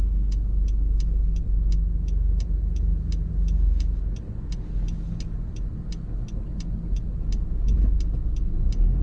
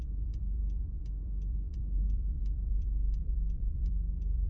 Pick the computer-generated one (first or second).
second